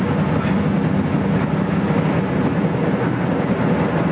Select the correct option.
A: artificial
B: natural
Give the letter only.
B